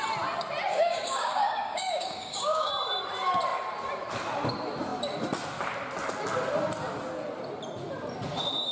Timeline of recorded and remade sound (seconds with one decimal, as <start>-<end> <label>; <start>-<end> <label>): 0.0-0.7 recorded; 0.7-2.7 remade; 2.7-8.7 recorded